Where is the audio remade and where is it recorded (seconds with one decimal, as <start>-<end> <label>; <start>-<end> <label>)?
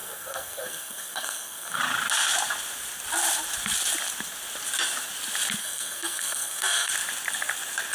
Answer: 0.0-1.8 remade; 1.8-5.6 recorded; 5.6-6.9 remade; 6.9-7.9 recorded